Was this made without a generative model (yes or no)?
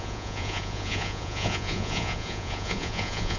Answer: no